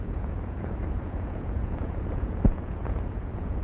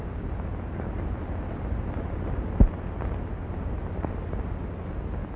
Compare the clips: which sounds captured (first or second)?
second